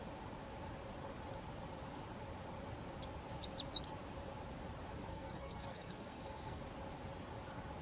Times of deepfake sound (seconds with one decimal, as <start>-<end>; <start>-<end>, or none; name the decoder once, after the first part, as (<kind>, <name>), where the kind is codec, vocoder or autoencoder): 5.1-6.6 (codec, SNAC)